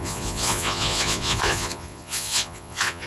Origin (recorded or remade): remade